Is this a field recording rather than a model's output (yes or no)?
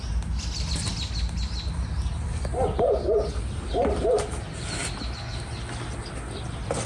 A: yes